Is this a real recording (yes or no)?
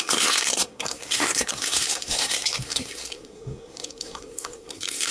no